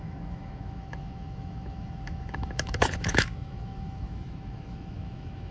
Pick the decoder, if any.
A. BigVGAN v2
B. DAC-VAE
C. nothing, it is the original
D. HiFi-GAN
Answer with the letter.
B